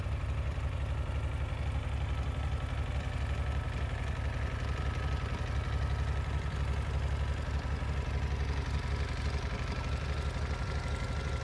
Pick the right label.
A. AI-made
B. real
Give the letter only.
B